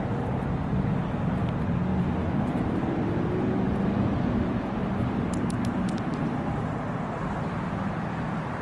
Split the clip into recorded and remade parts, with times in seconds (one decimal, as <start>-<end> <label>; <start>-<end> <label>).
0.0-1.9 recorded; 1.9-2.7 remade; 2.7-4.8 recorded; 4.8-6.8 remade; 6.8-8.6 recorded